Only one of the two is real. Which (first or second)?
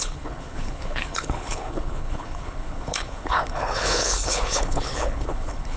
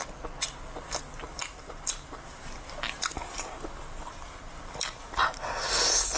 second